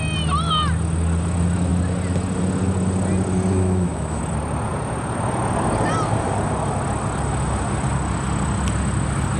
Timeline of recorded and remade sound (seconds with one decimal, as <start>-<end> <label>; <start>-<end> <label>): 0.0-3.5 recorded; 3.5-4.2 remade; 4.2-9.4 recorded